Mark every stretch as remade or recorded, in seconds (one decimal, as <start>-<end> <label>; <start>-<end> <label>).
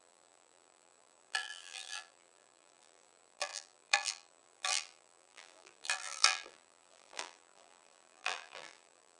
0.0-9.2 remade